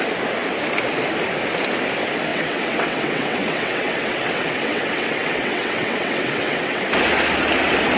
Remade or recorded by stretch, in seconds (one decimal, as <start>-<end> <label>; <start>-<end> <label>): 0.0-2.3 recorded; 2.3-6.8 remade; 6.8-8.0 recorded